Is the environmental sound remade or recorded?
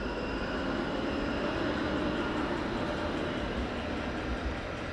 recorded